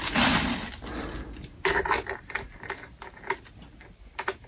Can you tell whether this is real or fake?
real